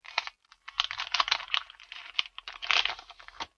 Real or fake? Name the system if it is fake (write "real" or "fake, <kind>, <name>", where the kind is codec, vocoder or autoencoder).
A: real